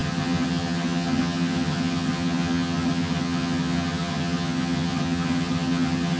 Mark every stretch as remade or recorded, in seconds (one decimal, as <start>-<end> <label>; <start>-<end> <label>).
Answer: 0.0-6.2 remade